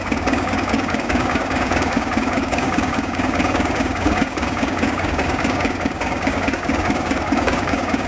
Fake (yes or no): yes